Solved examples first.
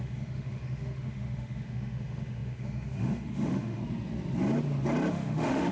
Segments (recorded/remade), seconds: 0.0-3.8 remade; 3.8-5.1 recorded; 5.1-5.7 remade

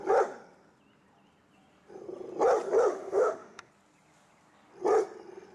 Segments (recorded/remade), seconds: 0.0-2.9 recorded; 2.9-3.7 remade; 3.7-5.5 recorded

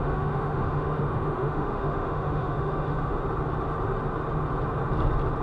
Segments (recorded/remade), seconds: 0.0-3.2 remade; 3.2-5.4 recorded

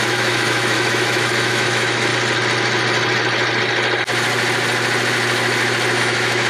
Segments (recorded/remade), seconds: 0.0-2.1 remade; 2.1-6.0 recorded; 6.0-6.5 remade